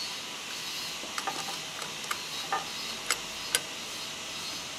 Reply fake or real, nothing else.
real